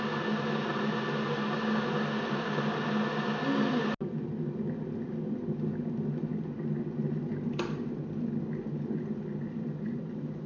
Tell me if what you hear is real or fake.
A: real